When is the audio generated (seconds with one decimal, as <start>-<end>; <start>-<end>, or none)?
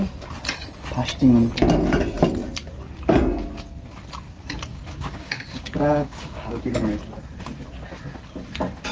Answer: 4.7-6.6